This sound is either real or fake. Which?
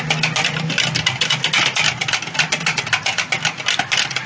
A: real